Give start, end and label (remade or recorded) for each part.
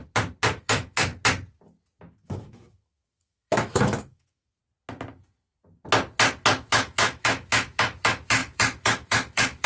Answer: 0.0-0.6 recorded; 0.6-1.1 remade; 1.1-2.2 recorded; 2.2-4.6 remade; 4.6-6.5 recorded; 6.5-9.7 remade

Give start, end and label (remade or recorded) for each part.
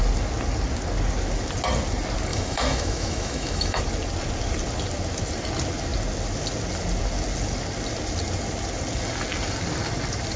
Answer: 0.0-2.3 recorded; 2.3-3.8 remade; 3.8-10.4 recorded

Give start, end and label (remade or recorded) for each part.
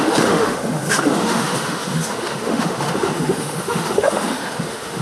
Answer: 0.0-5.0 remade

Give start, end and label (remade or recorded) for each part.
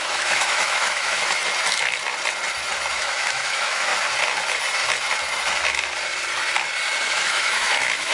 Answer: 0.0-1.4 remade; 1.4-2.9 recorded; 2.9-3.9 remade; 3.9-7.1 recorded; 7.1-8.1 remade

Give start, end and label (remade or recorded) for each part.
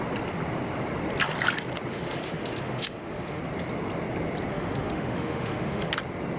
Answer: 0.0-1.9 recorded; 1.9-3.4 remade; 3.4-4.5 recorded; 4.5-5.9 remade; 5.9-6.4 recorded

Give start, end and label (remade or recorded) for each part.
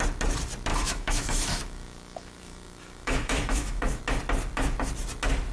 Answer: 0.0-0.7 recorded; 0.7-4.0 remade; 4.0-5.5 recorded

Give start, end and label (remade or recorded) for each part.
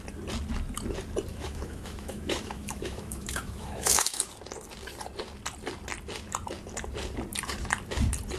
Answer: 0.0-1.3 recorded; 1.3-4.3 remade; 4.3-8.4 recorded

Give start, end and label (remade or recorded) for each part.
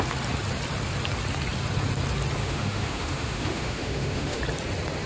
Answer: 0.0-2.4 recorded; 2.4-4.4 remade; 4.4-5.1 recorded